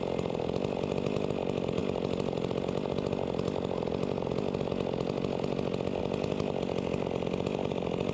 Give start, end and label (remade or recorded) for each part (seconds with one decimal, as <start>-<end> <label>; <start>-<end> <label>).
0.0-8.1 recorded

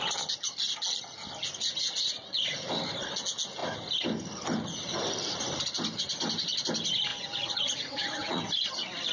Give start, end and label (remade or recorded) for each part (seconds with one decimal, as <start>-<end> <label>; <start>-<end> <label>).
0.0-7.1 recorded; 7.1-8.4 remade; 8.4-9.1 recorded

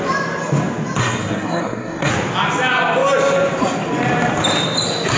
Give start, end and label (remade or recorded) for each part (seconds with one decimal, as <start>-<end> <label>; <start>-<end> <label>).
0.0-1.0 recorded; 1.0-2.1 remade; 2.1-5.2 recorded

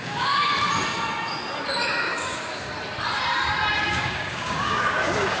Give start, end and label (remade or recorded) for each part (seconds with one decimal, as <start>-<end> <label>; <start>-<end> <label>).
0.0-0.5 remade; 0.5-2.0 recorded; 2.0-2.7 remade; 2.7-3.8 recorded; 3.8-5.4 remade

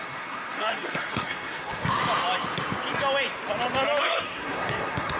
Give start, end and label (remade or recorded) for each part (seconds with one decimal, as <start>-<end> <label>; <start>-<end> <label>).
0.0-2.0 remade; 2.0-4.0 recorded; 4.0-5.2 remade

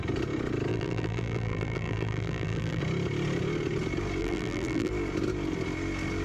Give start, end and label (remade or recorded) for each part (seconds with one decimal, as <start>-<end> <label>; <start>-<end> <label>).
0.0-0.7 recorded; 0.7-2.8 remade; 2.8-4.2 recorded; 4.2-4.9 remade; 4.9-6.2 recorded